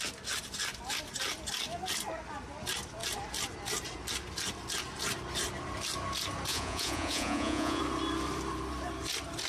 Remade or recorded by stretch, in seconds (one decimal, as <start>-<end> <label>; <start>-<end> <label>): 0.0-6.5 recorded; 6.5-7.8 remade; 7.8-9.5 recorded